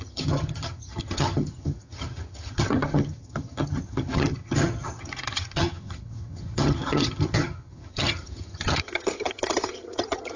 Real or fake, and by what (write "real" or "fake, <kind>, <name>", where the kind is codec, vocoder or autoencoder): fake, vocoder, HiFi-GAN